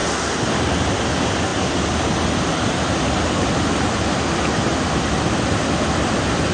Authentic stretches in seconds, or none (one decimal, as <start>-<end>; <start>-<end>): 0.0-6.5